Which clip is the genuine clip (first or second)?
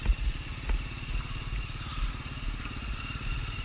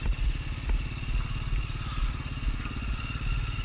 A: second